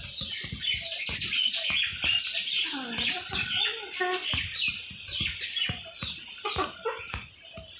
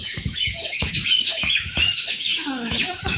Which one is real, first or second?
first